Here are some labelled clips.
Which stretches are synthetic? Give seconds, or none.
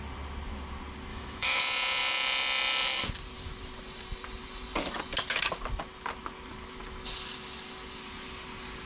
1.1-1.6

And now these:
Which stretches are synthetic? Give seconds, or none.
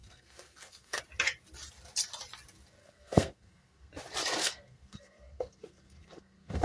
0.0-1.0; 2.8-3.9; 4.4-6.6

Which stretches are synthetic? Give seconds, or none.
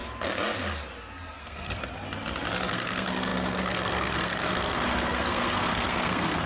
1.4-1.8; 2.7-6.5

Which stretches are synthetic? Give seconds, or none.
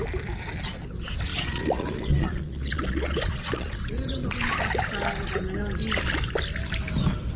1.3-3.7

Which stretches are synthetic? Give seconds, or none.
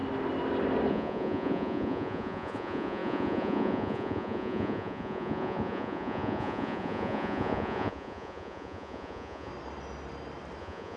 0.9-9.5; 10.6-11.0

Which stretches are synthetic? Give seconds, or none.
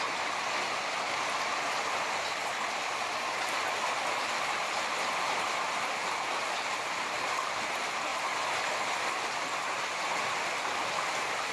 none